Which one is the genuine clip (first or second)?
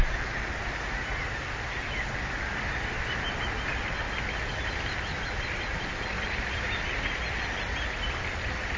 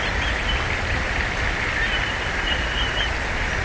first